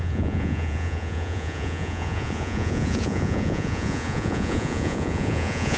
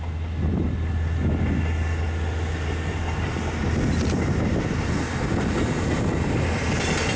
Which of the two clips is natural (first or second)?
second